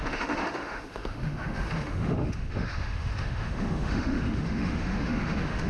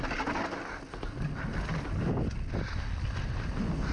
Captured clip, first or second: second